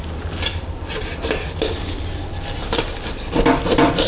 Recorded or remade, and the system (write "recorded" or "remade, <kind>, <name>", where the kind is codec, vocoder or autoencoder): recorded